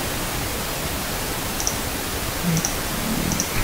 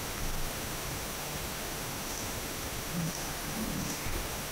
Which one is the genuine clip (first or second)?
first